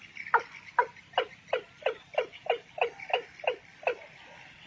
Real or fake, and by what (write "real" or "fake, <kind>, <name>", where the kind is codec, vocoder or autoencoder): real